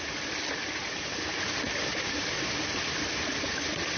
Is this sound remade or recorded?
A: recorded